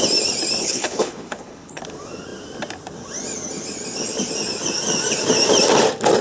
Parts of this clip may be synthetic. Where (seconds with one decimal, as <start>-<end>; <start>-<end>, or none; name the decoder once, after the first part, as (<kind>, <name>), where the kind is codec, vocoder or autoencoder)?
0.6-1.8 (codec, HILCodec)